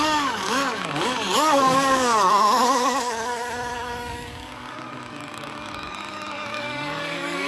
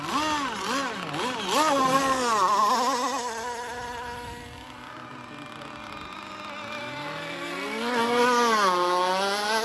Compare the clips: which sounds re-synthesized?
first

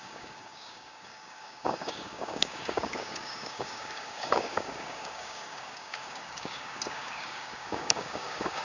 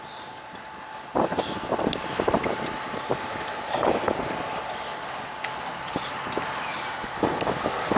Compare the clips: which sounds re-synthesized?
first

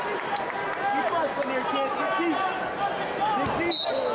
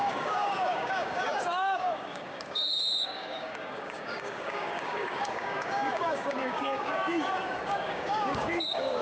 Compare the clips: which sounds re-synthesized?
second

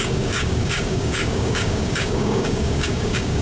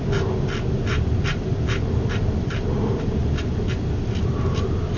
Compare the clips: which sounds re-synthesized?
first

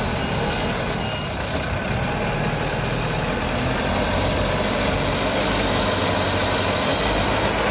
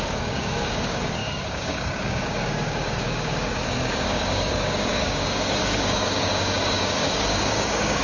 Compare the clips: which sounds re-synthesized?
second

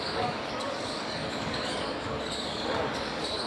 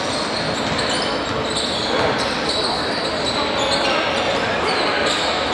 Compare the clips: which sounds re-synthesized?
first